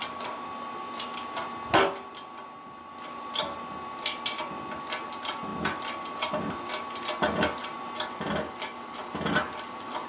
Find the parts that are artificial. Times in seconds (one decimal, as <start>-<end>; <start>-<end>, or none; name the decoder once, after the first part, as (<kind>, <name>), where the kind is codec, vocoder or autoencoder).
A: none

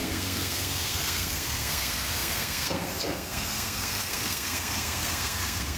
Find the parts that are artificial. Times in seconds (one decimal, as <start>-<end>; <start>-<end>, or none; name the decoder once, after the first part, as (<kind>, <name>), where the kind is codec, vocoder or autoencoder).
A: 0.0-5.8 (codec, SNAC)

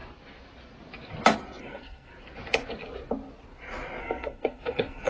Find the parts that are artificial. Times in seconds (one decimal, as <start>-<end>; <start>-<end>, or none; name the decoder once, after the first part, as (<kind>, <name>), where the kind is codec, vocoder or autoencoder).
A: 1.6-2.1 (codec, SNAC); 4.0-5.1

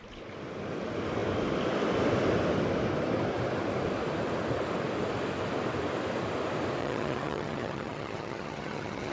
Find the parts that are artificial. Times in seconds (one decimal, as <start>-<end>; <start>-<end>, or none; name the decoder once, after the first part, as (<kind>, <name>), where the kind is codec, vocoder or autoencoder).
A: 6.8-9.1 (vocoder, HiFi-GAN)